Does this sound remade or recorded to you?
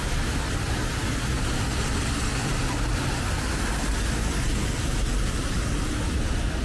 recorded